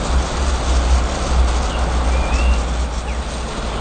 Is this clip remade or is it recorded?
recorded